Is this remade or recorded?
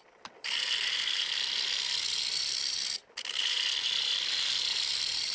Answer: recorded